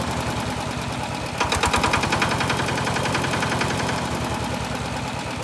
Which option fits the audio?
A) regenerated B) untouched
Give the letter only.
B